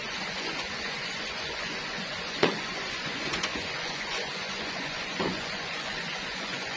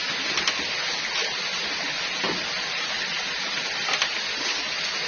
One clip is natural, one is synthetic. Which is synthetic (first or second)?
first